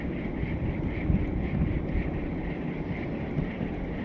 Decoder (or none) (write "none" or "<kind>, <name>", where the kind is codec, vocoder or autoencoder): none